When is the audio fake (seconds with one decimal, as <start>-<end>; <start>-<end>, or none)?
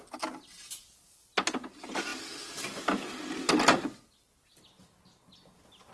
none